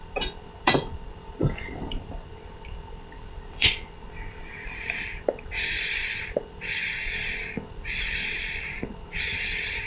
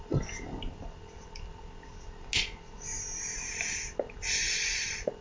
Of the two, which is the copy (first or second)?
first